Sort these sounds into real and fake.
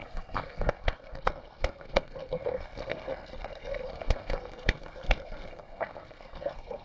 fake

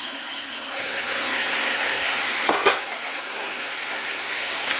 fake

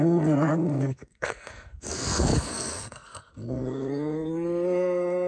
fake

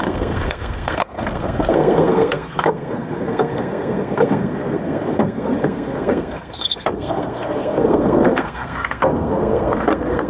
fake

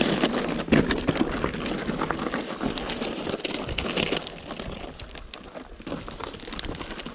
real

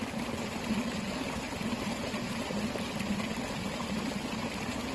real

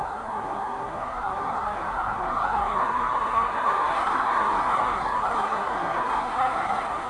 fake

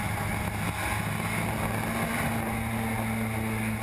real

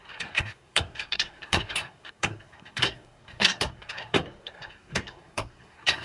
fake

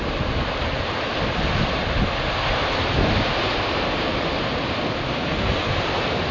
real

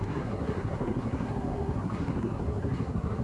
fake